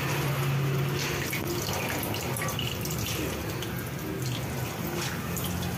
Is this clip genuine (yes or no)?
yes